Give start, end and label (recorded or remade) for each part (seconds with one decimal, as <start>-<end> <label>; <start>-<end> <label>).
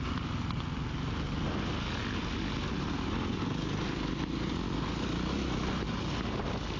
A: 0.0-6.8 recorded